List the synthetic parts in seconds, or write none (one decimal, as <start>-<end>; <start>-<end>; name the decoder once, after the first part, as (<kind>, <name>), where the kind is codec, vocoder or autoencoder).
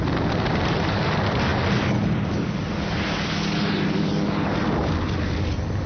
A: none